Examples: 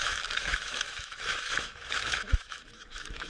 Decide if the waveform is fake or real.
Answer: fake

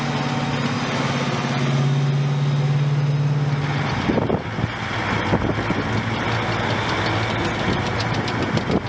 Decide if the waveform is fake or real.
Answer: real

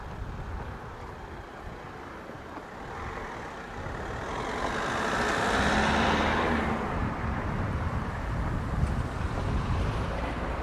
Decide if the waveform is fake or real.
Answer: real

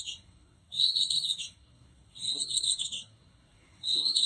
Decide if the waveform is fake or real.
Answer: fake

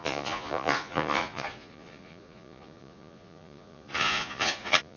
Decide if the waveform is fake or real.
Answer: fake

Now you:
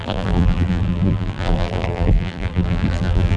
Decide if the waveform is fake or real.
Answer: fake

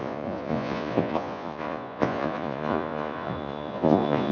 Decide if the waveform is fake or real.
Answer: fake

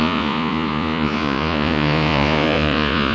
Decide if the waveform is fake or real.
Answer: fake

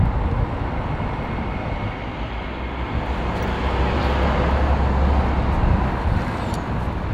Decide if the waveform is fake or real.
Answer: real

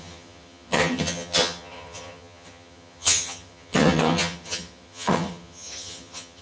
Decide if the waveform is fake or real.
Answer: fake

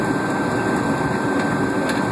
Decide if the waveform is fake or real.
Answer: real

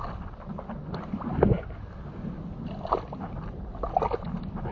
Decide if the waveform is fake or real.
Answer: real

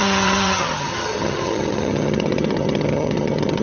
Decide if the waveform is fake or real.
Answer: fake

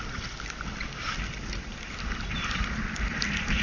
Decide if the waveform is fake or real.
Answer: real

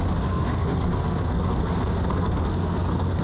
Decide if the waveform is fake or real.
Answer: fake